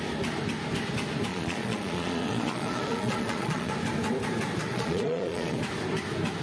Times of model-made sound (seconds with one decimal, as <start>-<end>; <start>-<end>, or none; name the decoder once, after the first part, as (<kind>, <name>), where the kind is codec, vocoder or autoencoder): 1.3-3.7 (vocoder, Vocos); 4.7-5.6